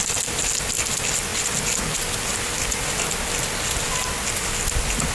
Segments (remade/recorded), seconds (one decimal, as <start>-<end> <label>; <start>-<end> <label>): 0.0-5.1 recorded